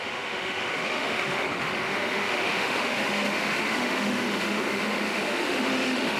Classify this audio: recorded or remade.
remade